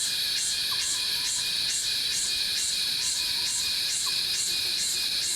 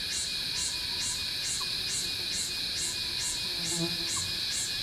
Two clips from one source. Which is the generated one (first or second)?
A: first